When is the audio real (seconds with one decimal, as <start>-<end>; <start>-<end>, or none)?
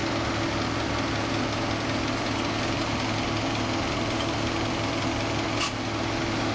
0.0-6.5